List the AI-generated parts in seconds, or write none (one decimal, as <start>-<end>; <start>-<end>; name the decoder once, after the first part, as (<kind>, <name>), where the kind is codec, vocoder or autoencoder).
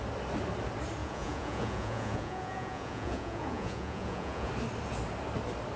1.0-4.5 (vocoder, Vocos)